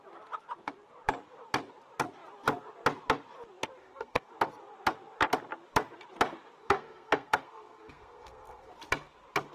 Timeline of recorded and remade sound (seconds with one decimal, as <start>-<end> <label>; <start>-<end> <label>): 0.0-3.8 recorded; 3.8-4.3 remade; 4.3-6.6 recorded; 6.6-8.7 remade; 8.7-9.5 recorded